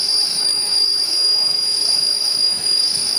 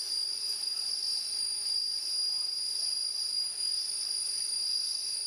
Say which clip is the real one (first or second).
second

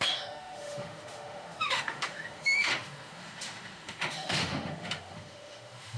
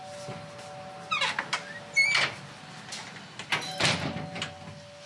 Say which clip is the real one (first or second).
second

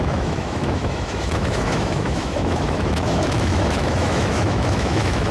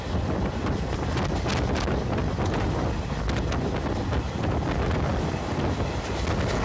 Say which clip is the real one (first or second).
second